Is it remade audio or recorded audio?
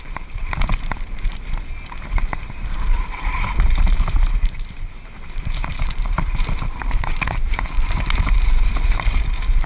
remade